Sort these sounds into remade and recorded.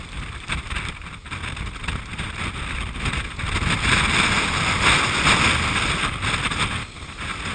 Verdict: recorded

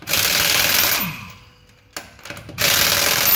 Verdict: recorded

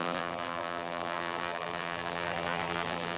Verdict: remade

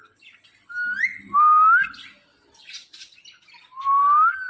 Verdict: recorded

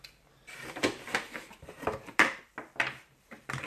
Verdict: remade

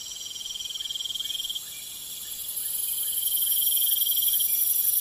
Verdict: recorded